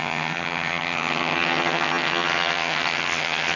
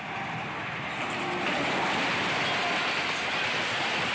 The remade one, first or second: first